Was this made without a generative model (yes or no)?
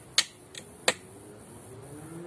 yes